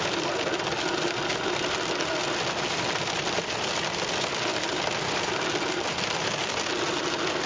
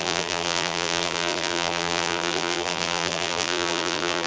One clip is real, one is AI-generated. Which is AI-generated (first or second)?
second